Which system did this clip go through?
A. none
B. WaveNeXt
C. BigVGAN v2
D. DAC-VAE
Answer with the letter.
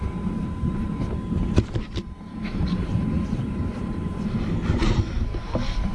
C